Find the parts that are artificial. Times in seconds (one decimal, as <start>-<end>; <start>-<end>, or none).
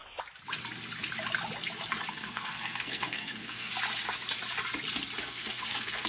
2.1-3.7; 5.2-6.1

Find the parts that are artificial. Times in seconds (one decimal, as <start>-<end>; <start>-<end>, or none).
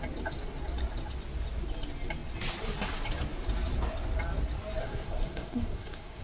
4.8-6.2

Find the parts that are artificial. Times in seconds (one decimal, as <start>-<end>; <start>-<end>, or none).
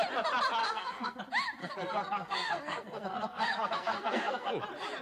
0.6-1.2; 1.6-4.5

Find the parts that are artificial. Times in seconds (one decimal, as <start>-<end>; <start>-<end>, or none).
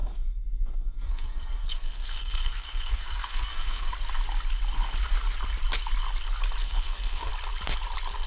0.0-3.9; 6.6-7.3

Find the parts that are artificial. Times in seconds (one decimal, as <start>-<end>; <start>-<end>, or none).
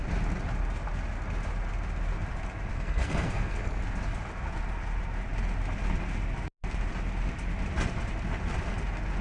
2.7-3.8